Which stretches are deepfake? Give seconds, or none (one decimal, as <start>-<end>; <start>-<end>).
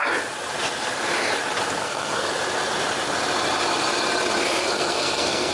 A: 1.8-2.3; 4.6-5.5